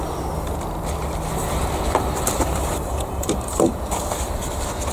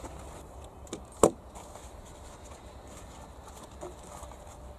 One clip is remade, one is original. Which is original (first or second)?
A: second